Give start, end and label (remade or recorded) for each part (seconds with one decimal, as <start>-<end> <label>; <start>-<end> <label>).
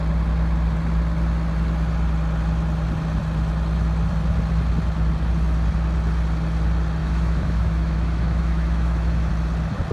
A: 0.0-7.0 recorded; 7.0-9.3 remade; 9.3-9.9 recorded